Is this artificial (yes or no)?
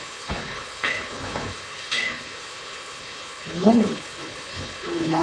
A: yes